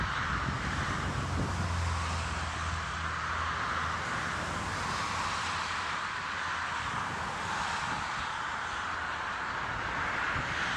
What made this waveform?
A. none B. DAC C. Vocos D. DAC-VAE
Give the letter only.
A